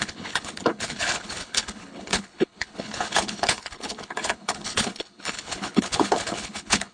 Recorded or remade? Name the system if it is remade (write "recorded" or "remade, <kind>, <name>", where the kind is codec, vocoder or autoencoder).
remade, codec, HILCodec